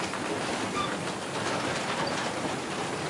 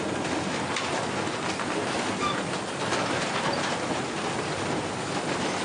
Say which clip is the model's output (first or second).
first